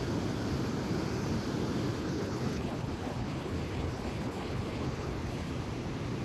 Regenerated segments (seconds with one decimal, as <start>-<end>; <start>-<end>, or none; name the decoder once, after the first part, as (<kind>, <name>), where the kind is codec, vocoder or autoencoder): 2.0-5.5 (codec, HILCodec)